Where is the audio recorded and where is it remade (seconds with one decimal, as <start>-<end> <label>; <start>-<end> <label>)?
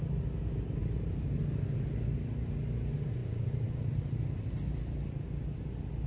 0.0-0.8 recorded; 0.8-1.4 remade; 1.4-6.1 recorded